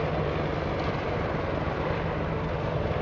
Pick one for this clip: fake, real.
real